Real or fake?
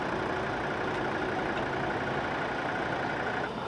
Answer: real